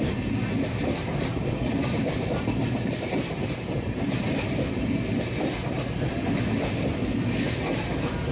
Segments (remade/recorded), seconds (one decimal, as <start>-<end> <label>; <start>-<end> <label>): 0.0-1.1 recorded; 1.1-5.0 remade; 5.0-5.6 recorded; 5.6-6.2 remade; 6.2-8.3 recorded